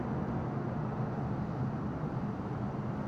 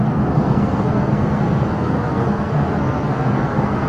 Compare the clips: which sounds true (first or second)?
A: first